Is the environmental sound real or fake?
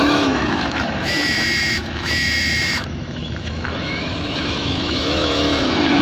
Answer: fake